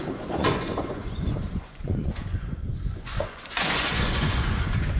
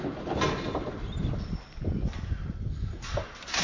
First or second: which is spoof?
first